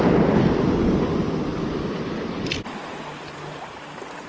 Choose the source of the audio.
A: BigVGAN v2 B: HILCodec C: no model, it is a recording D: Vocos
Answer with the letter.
C